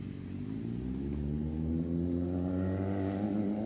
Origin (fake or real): real